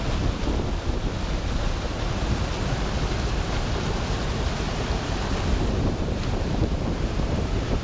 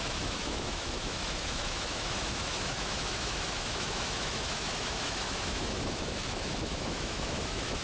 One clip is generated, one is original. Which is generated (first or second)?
second